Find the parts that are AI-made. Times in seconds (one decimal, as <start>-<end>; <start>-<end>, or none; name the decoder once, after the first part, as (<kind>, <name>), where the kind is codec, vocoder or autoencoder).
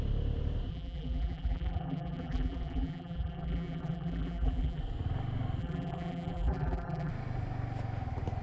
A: 0.7-4.8 (vocoder, BigVGAN v2); 5.6-7.1